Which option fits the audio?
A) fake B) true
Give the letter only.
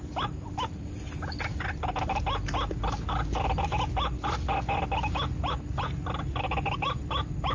B